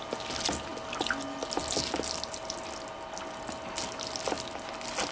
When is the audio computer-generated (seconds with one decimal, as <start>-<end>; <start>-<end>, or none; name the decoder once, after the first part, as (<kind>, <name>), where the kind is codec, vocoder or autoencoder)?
none

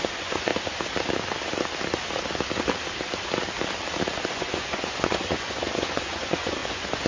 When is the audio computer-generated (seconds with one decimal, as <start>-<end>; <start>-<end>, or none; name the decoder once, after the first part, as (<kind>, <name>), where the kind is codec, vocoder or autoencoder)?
0.0-0.5 (vocoder, Vocos); 4.3-7.1